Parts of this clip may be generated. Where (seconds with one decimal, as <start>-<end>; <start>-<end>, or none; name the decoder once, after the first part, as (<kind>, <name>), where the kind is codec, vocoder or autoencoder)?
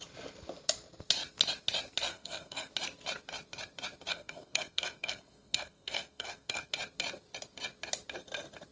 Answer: 2.1-2.7 (codec, SNAC); 4.1-6.7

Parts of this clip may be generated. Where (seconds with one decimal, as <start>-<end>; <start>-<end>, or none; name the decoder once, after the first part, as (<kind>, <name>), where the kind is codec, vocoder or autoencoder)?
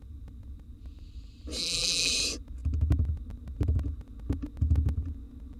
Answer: 1.6-2.1 (vocoder, BigVGAN v2)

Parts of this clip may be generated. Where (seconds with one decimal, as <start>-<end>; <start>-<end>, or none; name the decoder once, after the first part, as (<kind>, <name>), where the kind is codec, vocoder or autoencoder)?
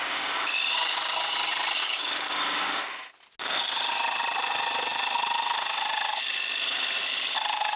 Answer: 0.0-0.5 (codec, DAC); 1.8-2.8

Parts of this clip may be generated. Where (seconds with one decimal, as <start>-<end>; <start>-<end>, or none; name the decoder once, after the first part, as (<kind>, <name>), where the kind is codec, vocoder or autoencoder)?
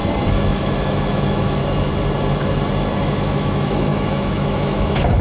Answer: 0.5-1.6 (autoencoder, DAC-VAE); 3.0-5.2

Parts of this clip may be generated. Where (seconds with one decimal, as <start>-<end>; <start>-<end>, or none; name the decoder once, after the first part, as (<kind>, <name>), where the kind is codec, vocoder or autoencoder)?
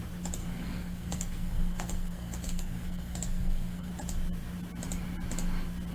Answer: 0.4-3.9 (codec, SNAC)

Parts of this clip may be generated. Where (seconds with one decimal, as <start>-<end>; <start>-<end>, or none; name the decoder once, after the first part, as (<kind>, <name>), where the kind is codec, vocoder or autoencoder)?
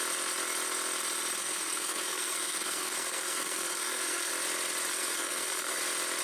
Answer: 1.4-4.3 (codec, SNAC); 4.9-5.8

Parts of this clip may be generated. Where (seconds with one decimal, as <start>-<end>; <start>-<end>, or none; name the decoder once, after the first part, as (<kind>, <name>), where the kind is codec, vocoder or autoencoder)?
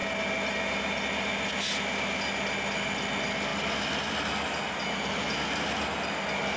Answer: none